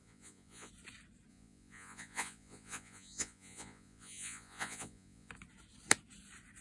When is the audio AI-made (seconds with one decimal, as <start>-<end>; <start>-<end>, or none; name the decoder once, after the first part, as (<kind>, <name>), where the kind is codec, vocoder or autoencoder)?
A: 0.0-0.7 (vocoder, Vocos); 1.3-5.3